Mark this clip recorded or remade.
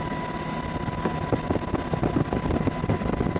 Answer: recorded